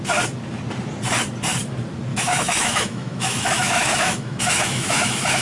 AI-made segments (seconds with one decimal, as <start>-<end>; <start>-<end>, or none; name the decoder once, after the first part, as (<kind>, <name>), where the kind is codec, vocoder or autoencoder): 2.1-5.4 (autoencoder, DAC-VAE)